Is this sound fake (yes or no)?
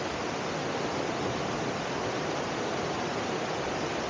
no